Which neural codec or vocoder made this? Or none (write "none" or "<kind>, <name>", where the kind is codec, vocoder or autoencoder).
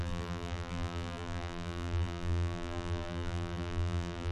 vocoder, BigVGAN v2